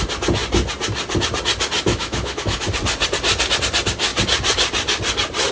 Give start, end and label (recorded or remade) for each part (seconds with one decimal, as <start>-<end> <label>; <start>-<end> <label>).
0.0-1.9 recorded; 1.9-2.7 remade; 2.7-5.5 recorded